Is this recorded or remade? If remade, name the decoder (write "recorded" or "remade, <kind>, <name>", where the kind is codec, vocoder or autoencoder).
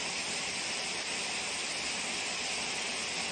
recorded